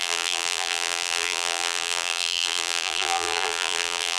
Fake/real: fake